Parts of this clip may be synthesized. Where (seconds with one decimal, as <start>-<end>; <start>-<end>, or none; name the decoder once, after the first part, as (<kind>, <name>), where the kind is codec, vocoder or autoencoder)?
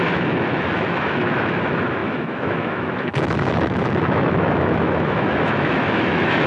0.0-6.5 (autoencoder, DAC-VAE)